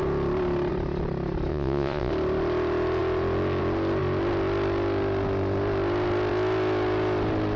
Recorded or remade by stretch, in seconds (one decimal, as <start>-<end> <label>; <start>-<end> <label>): 0.0-1.5 recorded; 1.5-2.1 remade; 2.1-7.6 recorded